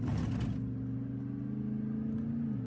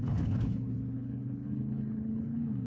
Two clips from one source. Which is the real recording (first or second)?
first